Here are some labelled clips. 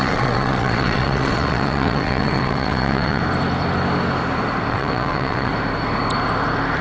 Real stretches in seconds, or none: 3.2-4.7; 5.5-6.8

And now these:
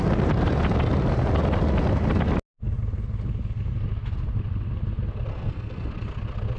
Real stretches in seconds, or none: 0.0-5.3; 5.9-6.6

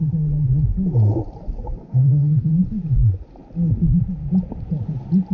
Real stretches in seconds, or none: 0.0-1.8; 2.5-5.3

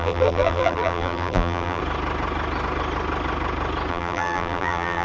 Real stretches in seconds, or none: 1.8-3.9

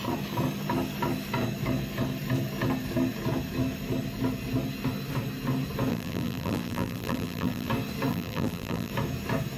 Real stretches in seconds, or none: 0.0-5.9; 7.7-8.1; 8.9-9.6

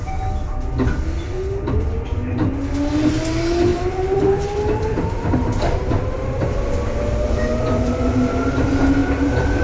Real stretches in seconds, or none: 0.0-3.7; 5.9-9.6